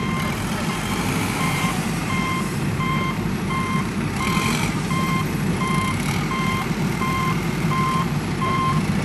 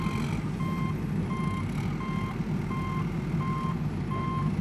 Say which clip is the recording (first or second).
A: second